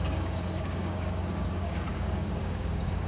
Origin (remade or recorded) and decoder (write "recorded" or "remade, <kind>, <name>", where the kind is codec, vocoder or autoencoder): remade, codec, DAC